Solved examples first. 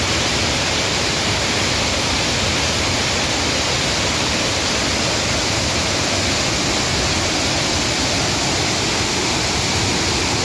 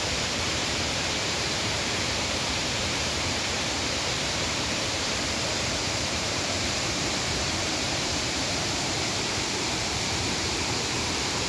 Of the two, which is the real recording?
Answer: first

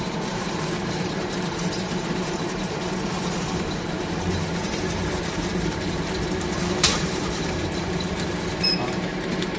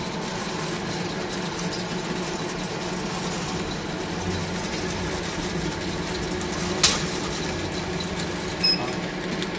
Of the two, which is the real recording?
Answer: second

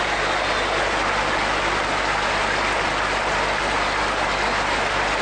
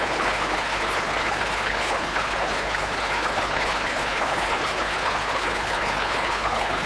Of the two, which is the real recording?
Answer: first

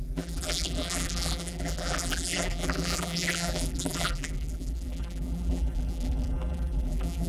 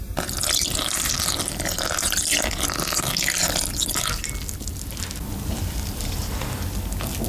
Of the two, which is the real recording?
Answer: second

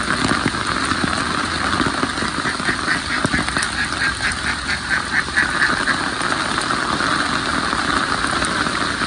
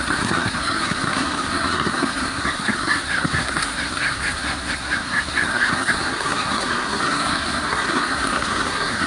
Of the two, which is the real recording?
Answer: first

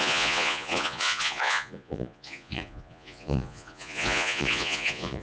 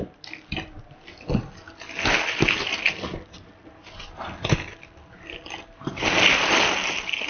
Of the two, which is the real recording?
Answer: second